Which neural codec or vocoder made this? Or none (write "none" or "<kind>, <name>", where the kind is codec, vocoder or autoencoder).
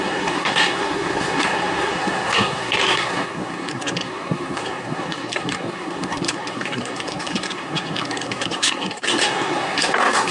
codec, SNAC